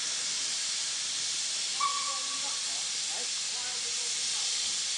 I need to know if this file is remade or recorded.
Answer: recorded